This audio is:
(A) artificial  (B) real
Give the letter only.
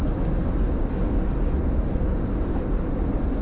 B